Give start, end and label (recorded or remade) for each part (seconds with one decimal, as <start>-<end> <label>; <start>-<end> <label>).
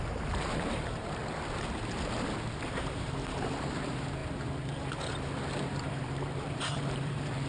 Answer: 0.0-1.2 remade; 1.2-2.7 recorded; 2.7-7.5 remade